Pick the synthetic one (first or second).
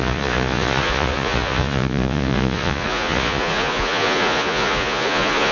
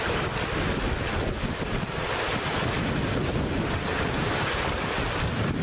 first